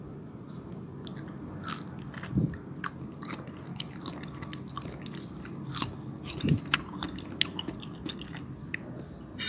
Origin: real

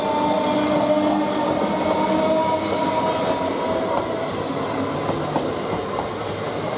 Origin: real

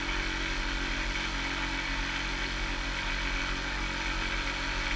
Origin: real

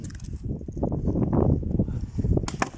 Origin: real